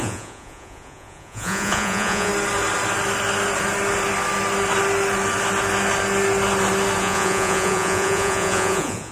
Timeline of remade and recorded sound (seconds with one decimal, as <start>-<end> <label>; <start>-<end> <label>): 0.0-2.3 remade; 2.3-7.0 recorded; 7.0-9.1 remade